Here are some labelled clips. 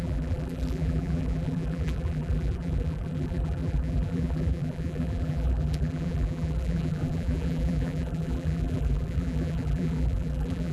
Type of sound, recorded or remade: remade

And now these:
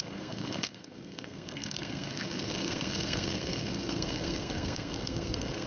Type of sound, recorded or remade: remade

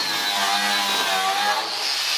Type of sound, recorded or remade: recorded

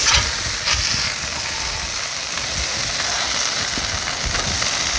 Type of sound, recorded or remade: recorded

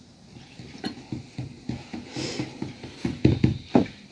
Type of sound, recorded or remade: recorded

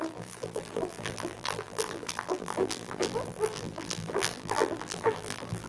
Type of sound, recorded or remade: remade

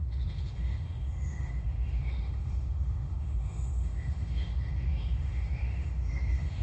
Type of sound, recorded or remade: remade